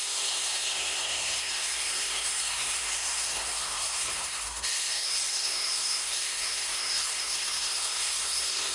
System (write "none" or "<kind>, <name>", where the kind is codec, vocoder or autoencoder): codec, SNAC